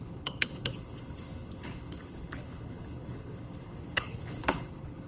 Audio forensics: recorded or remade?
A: remade